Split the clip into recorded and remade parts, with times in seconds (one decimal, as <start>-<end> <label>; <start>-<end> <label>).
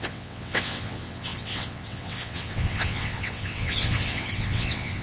0.0-5.0 remade